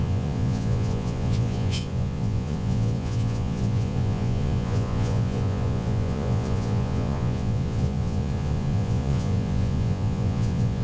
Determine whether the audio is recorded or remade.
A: remade